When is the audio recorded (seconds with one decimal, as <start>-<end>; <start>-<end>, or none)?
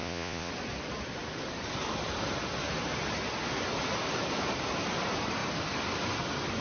0.5-6.6